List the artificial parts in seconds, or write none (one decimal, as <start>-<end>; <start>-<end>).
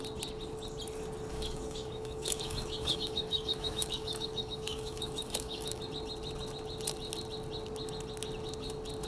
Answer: 1.3-5.8